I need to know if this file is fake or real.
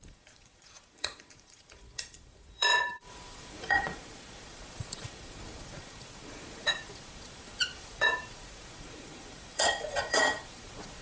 fake